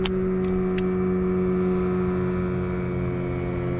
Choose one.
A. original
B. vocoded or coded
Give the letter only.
A